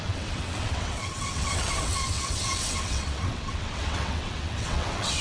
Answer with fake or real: fake